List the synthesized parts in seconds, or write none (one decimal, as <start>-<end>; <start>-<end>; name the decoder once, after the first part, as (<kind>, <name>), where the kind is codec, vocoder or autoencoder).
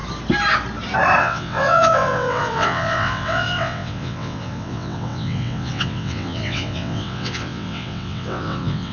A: 1.2-8.9 (vocoder, WaveNeXt)